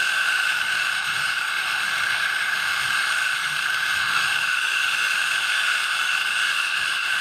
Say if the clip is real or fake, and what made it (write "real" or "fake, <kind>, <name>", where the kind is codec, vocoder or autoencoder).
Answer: fake, autoencoder, DAC-VAE